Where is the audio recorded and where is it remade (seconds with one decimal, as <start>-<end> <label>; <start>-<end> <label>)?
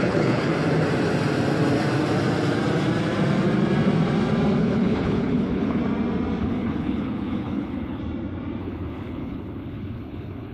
0.0-0.5 remade; 0.5-4.6 recorded; 4.6-5.8 remade; 5.8-6.4 recorded; 6.4-8.0 remade; 8.0-8.6 recorded; 8.6-10.5 remade